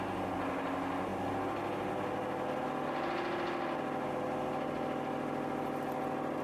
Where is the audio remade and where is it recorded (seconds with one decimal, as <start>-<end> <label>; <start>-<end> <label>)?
0.0-6.4 recorded